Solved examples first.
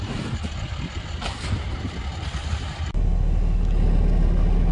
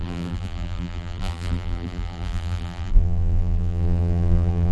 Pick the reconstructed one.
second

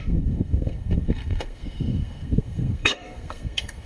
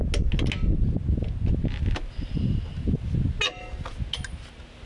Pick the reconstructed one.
first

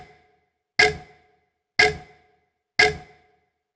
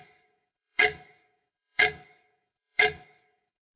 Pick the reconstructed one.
second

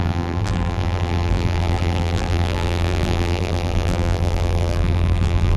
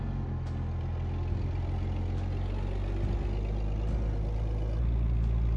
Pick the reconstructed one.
first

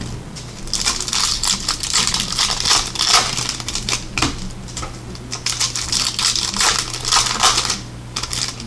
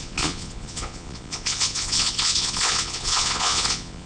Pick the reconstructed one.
second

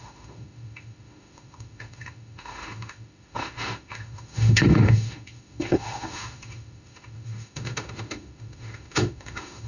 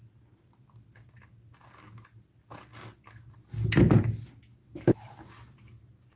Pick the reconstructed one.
first